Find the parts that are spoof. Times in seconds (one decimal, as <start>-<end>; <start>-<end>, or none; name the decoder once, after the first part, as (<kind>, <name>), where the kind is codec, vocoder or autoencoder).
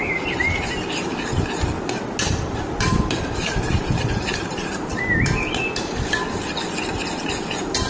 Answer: 0.0-1.1 (vocoder, BigVGAN v2); 2.8-4.9; 7.2-7.9